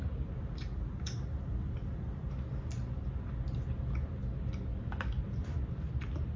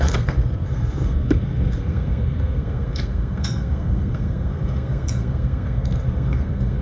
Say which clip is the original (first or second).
first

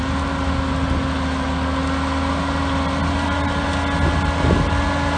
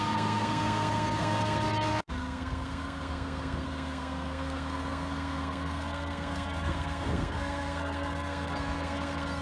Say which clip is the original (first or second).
first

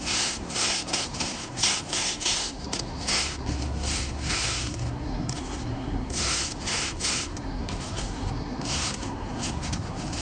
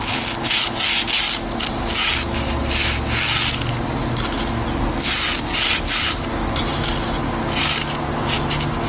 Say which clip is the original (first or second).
second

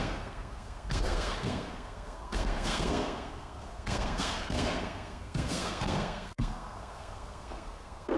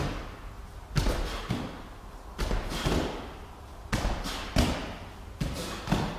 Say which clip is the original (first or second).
second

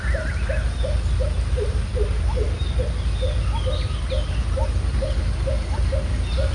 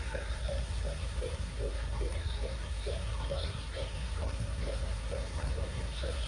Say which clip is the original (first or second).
first